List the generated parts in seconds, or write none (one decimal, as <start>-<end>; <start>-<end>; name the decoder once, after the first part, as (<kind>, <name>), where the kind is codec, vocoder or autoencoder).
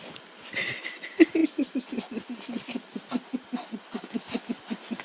none